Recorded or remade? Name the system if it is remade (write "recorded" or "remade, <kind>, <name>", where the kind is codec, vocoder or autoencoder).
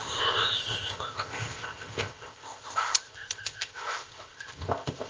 remade, codec, ZipCodec